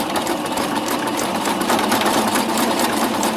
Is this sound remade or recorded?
remade